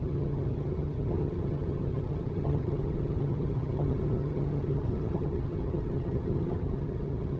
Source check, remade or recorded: remade